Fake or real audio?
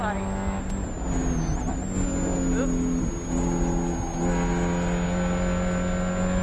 real